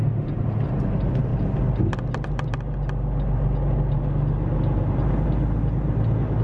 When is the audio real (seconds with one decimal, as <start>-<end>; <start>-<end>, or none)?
0.0-6.4